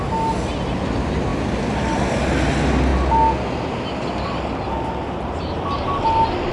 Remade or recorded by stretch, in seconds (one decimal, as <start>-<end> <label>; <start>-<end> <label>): 0.0-6.5 recorded